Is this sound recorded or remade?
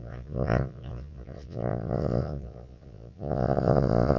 remade